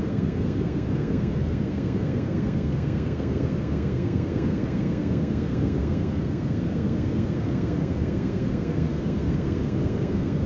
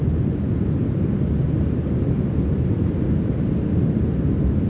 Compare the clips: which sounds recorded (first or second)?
second